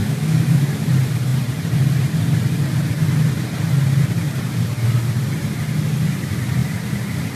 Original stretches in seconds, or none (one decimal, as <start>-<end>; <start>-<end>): 0.9-7.4